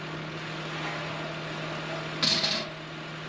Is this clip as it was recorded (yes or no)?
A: yes